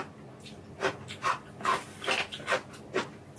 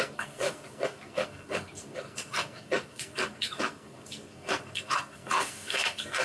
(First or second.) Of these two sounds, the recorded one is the first